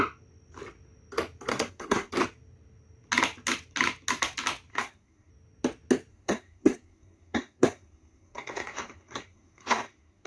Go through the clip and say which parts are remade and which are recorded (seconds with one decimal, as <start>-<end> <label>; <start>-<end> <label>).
0.0-1.5 recorded; 1.5-2.1 remade; 2.1-4.7 recorded; 4.7-5.3 remade; 5.3-6.1 recorded; 6.1-10.3 remade